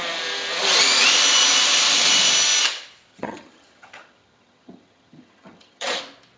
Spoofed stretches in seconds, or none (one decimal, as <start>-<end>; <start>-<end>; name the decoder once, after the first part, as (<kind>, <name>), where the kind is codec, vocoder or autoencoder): 3.1-6.0 (vocoder, HiFi-GAN)